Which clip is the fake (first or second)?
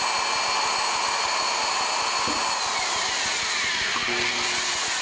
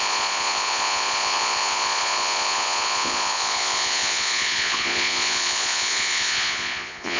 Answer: second